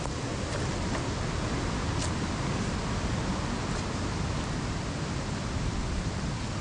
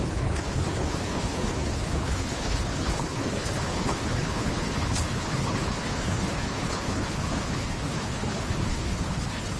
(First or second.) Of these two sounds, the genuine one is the first